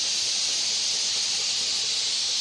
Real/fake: real